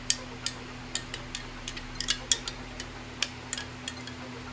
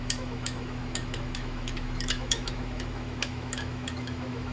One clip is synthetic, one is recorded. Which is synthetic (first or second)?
second